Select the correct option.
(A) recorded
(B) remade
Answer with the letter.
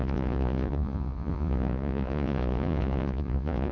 B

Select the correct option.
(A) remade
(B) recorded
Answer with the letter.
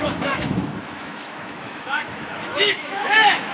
A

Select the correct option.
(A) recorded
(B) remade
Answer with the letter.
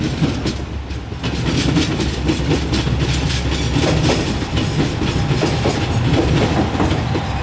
A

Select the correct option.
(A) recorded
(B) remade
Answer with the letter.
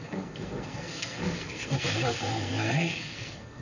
B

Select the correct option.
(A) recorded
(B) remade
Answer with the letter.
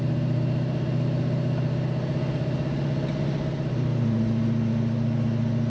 A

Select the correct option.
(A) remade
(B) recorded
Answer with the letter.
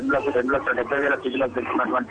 A